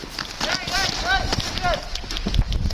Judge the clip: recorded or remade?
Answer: recorded